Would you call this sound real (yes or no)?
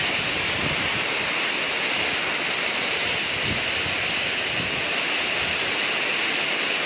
yes